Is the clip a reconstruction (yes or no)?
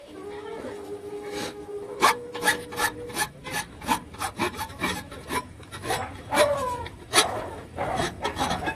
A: yes